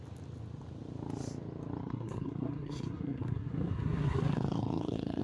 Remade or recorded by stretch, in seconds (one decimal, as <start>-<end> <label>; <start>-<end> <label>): 0.0-1.8 recorded; 1.8-5.2 remade